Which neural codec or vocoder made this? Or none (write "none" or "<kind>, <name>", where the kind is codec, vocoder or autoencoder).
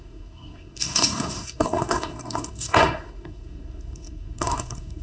codec, SNAC